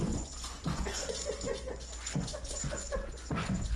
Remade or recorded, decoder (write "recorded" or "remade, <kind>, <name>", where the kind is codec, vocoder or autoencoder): remade, vocoder, Vocos